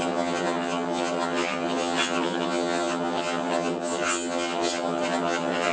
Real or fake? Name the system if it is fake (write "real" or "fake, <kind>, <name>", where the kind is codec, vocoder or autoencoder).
fake, vocoder, HiFi-GAN